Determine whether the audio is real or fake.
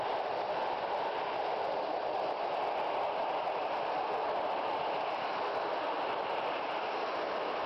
real